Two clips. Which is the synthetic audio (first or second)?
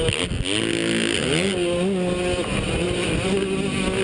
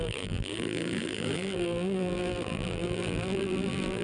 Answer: second